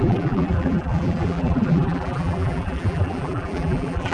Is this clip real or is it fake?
fake